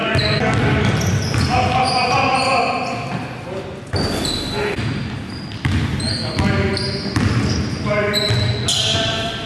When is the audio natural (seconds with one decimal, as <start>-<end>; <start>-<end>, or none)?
0.0-9.5